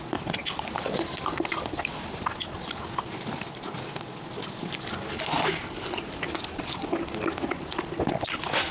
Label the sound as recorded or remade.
recorded